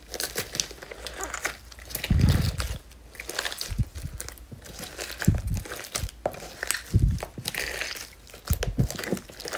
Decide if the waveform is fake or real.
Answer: real